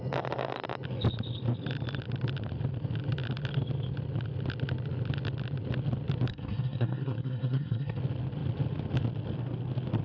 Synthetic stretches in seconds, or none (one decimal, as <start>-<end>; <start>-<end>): 6.3-8.0